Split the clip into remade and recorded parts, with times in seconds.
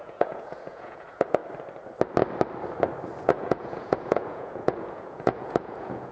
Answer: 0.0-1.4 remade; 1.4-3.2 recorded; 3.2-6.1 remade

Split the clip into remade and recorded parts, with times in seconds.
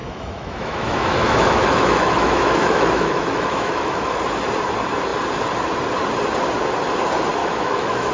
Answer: 0.0-4.2 remade; 4.2-7.4 recorded; 7.4-8.1 remade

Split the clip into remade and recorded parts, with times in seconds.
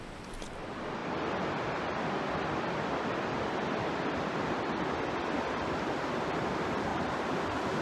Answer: 0.0-6.9 recorded; 6.9-7.8 remade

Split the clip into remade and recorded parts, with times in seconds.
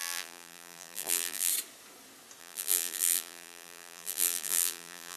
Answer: 0.0-1.5 remade; 1.5-2.4 recorded; 2.4-5.2 remade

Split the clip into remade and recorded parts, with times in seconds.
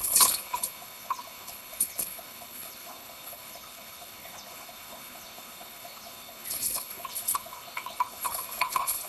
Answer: 0.0-9.1 remade